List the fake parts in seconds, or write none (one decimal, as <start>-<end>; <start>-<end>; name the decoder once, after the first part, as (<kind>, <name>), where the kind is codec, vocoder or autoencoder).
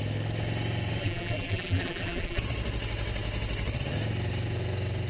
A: 1.0-2.4 (vocoder, BigVGAN v2)